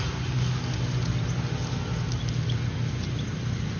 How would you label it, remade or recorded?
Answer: recorded